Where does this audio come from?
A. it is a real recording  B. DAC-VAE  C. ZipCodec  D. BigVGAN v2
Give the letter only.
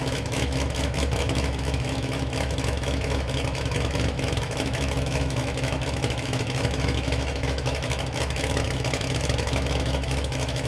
B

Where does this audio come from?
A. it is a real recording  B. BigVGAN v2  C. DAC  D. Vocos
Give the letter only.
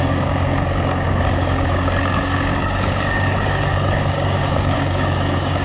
C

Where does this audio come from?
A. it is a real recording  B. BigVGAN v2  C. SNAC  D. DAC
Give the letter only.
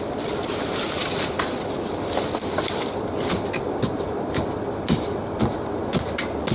A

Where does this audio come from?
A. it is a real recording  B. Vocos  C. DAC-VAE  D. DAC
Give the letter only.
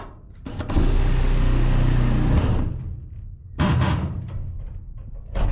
A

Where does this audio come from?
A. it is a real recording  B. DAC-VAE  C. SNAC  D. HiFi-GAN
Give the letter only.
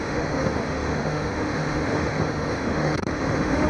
B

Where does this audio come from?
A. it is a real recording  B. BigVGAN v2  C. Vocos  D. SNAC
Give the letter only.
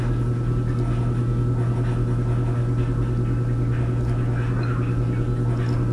A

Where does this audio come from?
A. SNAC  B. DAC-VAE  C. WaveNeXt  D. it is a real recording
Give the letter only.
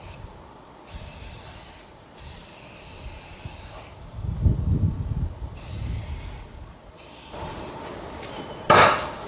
D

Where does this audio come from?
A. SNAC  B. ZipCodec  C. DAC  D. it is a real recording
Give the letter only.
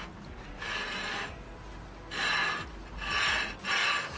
D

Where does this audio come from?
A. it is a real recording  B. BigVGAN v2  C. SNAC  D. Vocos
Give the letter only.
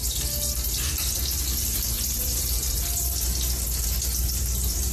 B